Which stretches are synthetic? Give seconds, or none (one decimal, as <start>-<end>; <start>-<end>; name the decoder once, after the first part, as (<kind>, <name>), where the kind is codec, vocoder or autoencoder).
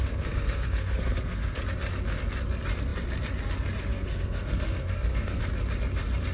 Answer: 0.0-1.6 (codec, SNAC); 3.9-5.4